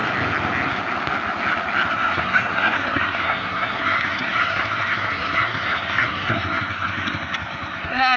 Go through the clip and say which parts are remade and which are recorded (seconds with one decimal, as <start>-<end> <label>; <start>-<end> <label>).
0.0-1.9 recorded; 1.9-8.2 remade